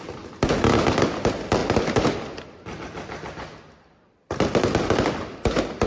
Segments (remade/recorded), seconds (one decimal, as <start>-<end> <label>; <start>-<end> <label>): 0.0-5.9 recorded

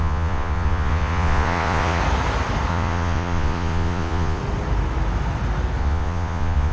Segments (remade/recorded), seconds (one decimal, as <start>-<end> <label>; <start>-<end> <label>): 0.0-2.0 remade; 2.0-2.7 recorded; 2.7-4.4 remade; 4.4-5.8 recorded; 5.8-6.7 remade

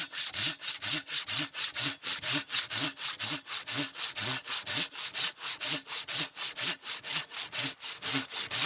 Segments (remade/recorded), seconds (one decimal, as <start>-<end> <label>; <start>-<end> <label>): 0.0-8.7 recorded

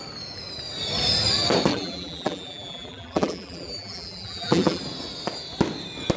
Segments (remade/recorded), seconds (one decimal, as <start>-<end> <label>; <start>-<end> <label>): 0.0-1.7 recorded; 1.7-4.8 remade; 4.8-6.2 recorded

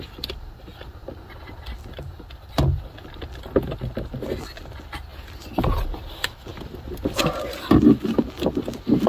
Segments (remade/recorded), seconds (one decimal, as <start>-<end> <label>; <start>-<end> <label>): 0.0-9.1 recorded